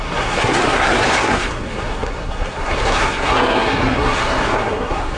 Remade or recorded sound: remade